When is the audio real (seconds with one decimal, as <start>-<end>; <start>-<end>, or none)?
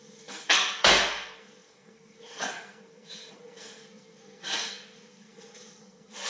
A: none